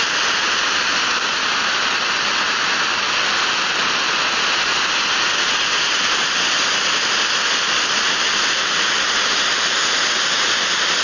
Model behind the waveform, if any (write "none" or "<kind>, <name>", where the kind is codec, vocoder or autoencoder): none